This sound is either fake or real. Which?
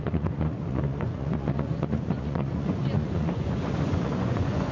fake